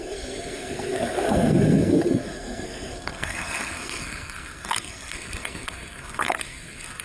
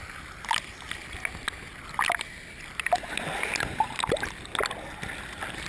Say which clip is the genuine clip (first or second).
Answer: second